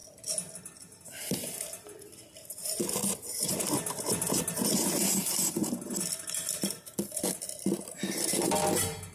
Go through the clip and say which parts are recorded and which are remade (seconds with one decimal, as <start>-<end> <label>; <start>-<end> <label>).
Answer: 0.0-9.1 recorded